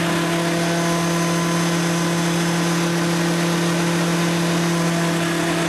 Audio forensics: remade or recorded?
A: recorded